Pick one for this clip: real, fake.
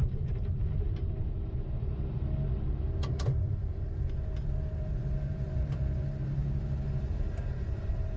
fake